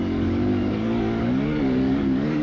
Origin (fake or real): fake